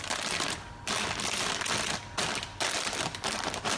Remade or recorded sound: recorded